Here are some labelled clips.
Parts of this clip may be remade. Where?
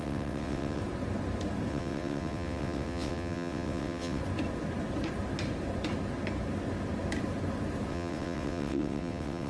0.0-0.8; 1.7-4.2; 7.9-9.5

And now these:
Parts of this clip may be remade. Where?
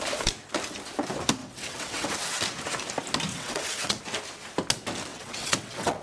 1.4-2.1; 3.3-4.0; 5.1-6.0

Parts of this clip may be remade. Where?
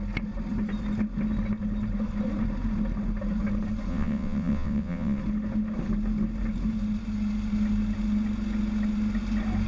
3.9-5.2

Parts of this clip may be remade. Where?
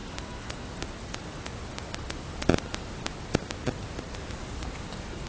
none